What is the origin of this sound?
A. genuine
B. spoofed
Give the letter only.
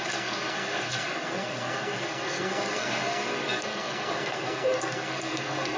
B